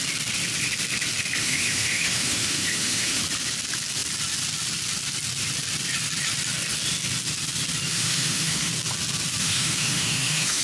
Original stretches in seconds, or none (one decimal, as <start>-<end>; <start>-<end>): 0.0-1.4; 3.2-7.9; 8.7-9.4